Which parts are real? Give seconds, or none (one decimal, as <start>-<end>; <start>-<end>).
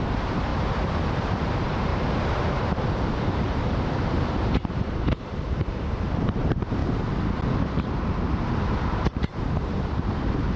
0.5-1.2; 6.8-7.6